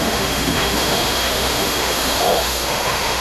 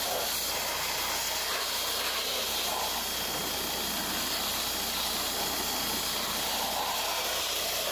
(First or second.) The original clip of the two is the second